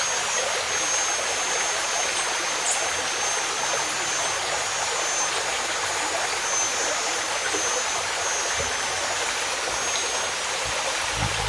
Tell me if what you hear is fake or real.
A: real